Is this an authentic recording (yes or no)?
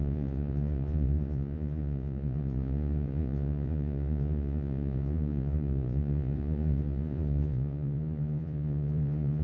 no